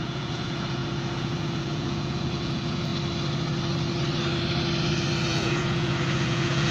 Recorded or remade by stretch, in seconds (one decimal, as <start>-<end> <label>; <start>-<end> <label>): 0.0-2.9 remade; 2.9-5.3 recorded; 5.3-6.7 remade